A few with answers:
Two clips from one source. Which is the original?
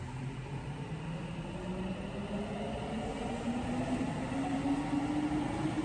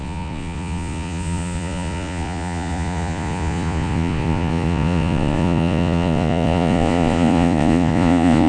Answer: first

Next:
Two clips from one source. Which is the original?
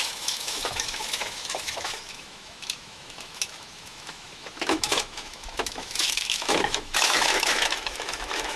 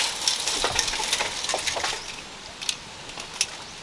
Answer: second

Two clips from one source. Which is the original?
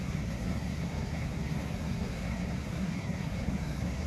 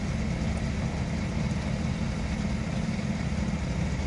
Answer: second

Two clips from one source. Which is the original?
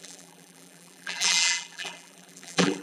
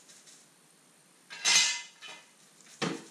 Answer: second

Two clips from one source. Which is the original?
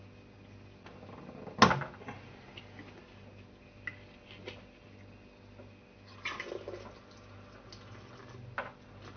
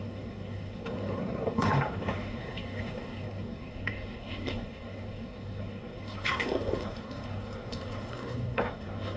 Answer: first